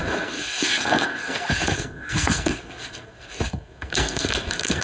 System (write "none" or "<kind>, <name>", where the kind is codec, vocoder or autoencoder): codec, SNAC